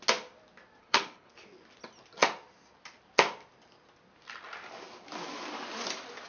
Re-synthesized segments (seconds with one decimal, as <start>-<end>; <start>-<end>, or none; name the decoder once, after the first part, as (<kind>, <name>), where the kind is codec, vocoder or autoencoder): 0.8-1.3 (codec, HILCodec)